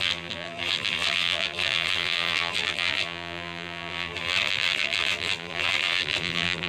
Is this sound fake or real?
fake